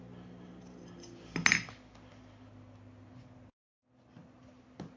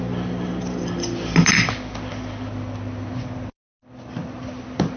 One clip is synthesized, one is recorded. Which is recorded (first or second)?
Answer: first